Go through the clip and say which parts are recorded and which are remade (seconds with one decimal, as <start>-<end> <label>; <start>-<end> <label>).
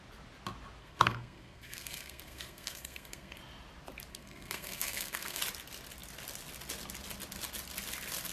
0.0-0.8 recorded; 0.8-3.4 remade; 3.4-4.1 recorded; 4.1-5.4 remade; 5.4-8.3 recorded